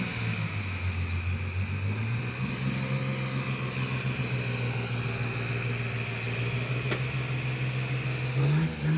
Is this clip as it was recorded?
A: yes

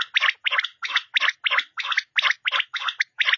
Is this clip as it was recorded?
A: yes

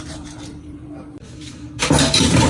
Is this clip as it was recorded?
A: no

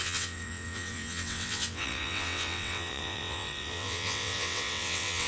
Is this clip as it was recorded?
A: no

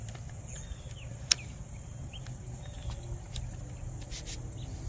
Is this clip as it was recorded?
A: yes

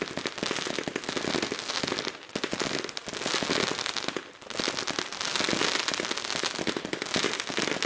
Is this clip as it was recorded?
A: yes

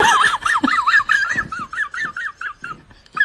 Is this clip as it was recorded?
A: yes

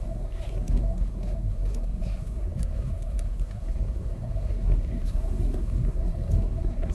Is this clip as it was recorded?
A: no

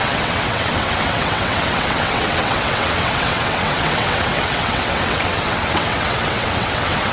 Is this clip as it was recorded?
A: no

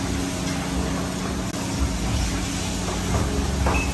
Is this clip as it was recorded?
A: yes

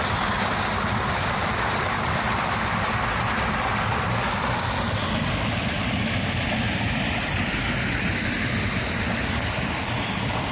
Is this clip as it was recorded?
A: yes